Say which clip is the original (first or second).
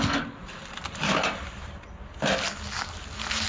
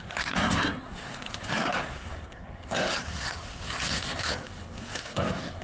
first